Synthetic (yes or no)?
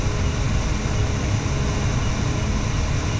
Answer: no